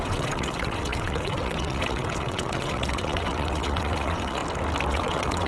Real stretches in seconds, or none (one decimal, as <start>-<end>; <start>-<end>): 4.4-4.9